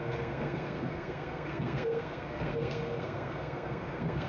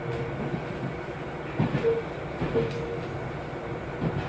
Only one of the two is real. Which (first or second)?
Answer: second